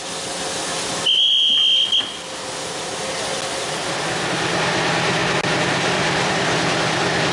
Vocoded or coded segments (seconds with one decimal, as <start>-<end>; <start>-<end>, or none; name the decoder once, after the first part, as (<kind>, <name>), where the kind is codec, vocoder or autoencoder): none